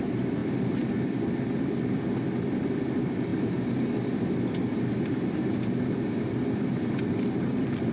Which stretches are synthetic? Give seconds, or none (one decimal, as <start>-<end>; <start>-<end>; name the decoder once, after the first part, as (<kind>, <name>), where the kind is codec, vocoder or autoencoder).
none

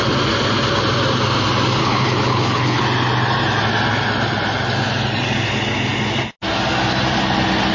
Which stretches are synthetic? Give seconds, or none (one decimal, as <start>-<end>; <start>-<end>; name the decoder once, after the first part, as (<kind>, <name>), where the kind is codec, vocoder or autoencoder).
1.8-2.8 (codec, HILCodec)